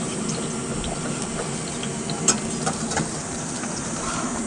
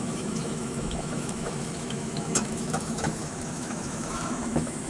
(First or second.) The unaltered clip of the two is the first